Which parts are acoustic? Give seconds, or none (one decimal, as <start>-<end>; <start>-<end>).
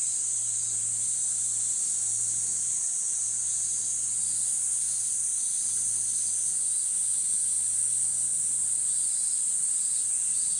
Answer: 0.0-10.6